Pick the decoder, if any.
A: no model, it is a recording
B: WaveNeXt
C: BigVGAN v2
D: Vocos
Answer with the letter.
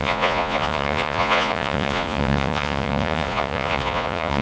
D